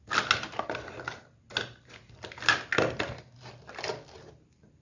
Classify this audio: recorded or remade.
recorded